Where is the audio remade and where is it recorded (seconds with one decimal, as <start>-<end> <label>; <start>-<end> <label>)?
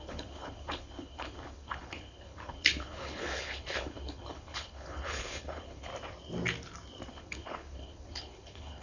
0.0-5.9 remade; 5.9-7.1 recorded; 7.1-8.8 remade